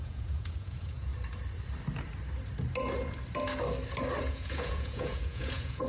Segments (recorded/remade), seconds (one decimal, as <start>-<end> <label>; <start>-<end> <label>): 0.0-1.1 remade; 1.1-4.2 recorded; 4.2-5.9 remade

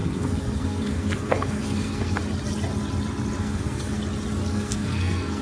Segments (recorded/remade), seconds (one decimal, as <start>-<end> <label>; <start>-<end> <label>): 0.0-2.2 remade; 2.2-3.4 recorded; 3.4-4.0 remade; 4.0-4.5 recorded; 4.5-5.4 remade